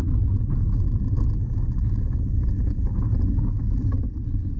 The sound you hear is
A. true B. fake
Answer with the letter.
A